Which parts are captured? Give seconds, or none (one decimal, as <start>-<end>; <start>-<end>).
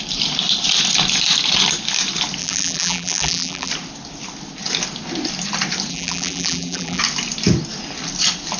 0.0-2.4; 3.7-5.9; 7.0-8.6